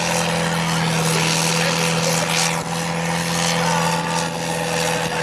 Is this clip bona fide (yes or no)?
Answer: yes